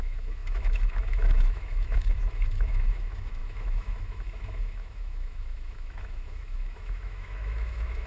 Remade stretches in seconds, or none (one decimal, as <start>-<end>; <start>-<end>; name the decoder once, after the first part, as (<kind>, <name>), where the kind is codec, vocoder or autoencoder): 0.0-8.1 (autoencoder, DAC-VAE)